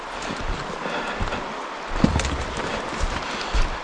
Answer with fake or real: real